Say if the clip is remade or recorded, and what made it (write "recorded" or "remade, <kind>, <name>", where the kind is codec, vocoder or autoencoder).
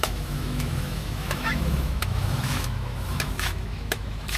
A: remade, autoencoder, DAC-VAE